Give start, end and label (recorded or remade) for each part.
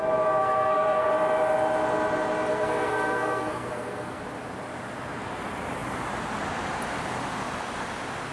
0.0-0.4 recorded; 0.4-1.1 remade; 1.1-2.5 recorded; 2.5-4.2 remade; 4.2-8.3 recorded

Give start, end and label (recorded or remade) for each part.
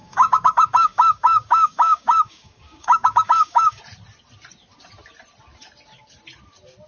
0.0-3.8 remade; 3.8-6.9 recorded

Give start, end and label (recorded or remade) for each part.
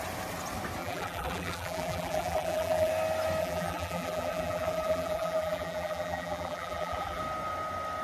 0.0-0.8 recorded; 0.8-2.9 remade; 2.9-3.4 recorded; 3.4-7.2 remade; 7.2-8.0 recorded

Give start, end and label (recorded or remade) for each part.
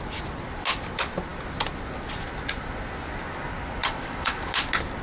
0.0-3.8 recorded; 3.8-4.4 remade; 4.4-5.0 recorded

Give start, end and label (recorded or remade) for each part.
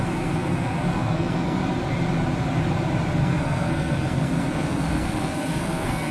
0.0-1.6 remade; 1.6-3.2 recorded; 3.2-6.1 remade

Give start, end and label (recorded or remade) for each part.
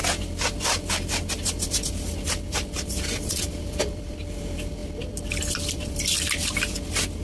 0.0-1.3 recorded; 1.3-7.2 remade